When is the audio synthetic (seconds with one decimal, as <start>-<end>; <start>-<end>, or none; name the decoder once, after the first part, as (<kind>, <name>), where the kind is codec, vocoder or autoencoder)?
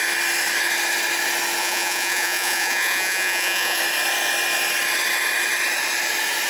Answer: 1.6-3.8 (vocoder, Vocos)